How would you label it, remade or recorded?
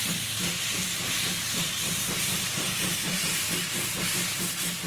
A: remade